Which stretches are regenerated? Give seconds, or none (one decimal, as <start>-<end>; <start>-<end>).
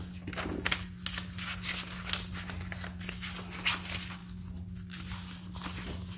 none